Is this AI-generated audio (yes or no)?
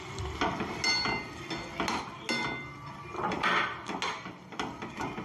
no